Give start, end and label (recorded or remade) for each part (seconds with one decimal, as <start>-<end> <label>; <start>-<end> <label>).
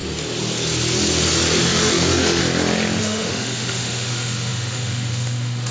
0.0-1.6 recorded; 1.6-2.4 remade; 2.4-3.0 recorded; 3.0-5.7 remade